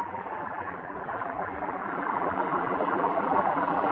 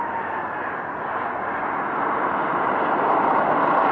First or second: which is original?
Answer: second